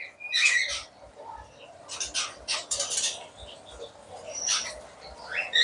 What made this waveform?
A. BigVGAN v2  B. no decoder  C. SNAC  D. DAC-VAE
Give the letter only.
B